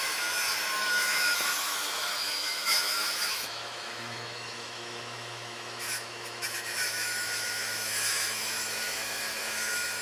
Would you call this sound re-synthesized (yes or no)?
yes